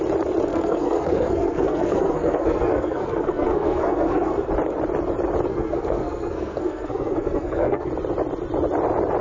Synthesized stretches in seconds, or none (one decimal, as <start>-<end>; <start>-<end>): 0.5-4.5; 5.5-7.9